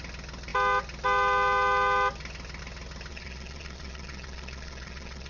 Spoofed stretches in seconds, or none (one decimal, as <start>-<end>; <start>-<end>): 3.1-5.3